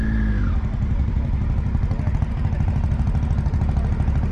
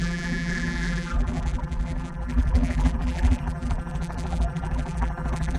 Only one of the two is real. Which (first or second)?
first